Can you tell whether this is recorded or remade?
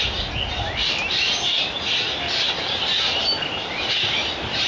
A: recorded